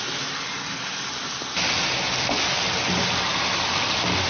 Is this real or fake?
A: real